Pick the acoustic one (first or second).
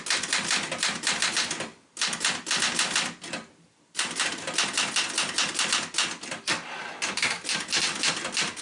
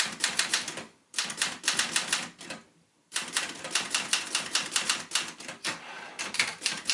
first